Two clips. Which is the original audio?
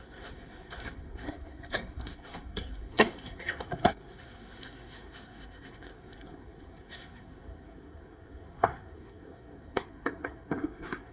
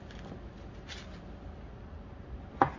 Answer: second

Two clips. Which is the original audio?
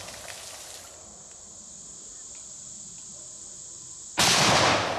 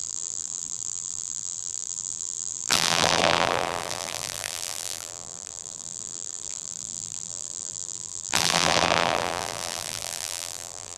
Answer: first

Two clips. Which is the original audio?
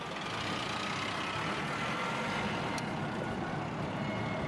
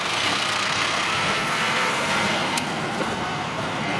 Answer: first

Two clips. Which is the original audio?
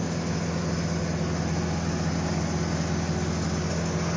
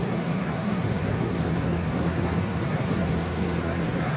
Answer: first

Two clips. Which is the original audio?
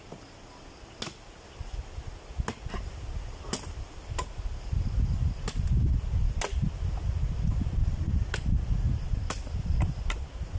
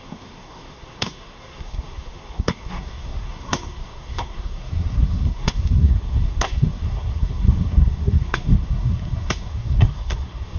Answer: first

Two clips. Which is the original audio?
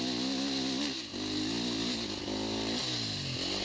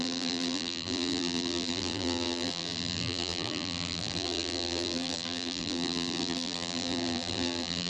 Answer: first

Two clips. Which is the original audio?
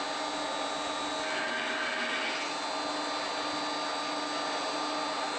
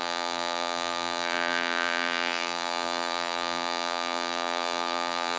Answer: first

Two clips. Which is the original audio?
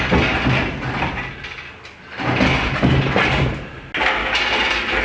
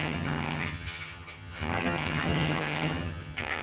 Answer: first